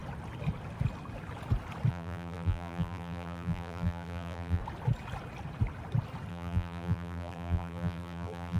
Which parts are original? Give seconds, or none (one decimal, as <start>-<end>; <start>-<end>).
0.0-1.9; 4.6-6.3